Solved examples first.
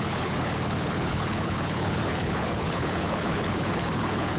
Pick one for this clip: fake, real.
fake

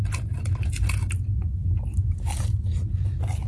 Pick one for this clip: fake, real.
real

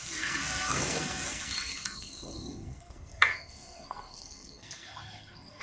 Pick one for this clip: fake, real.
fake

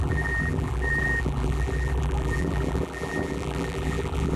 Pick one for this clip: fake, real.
fake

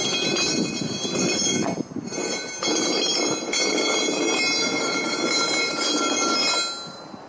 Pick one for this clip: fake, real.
fake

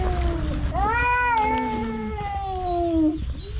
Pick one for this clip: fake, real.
real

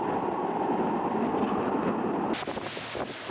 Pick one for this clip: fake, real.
real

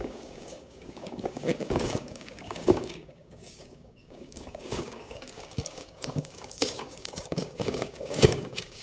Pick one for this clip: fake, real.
fake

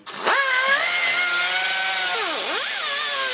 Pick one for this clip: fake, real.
real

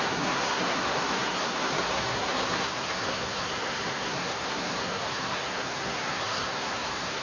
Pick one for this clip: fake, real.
fake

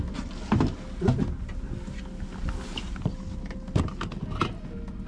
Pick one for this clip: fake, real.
real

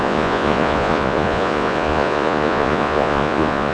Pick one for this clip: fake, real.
fake